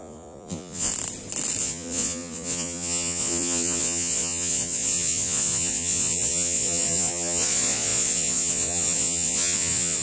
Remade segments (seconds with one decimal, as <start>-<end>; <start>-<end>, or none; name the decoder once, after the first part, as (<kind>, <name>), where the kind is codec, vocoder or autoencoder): 0.0-0.9 (vocoder, Vocos); 1.6-10.0